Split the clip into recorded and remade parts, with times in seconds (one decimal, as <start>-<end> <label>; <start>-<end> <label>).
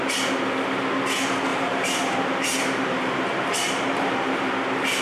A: 0.0-1.5 recorded; 1.5-4.5 remade; 4.5-5.0 recorded